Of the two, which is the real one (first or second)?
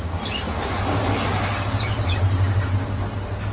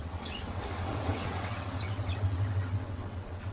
first